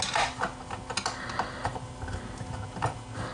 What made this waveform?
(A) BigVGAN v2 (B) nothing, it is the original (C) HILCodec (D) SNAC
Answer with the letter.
B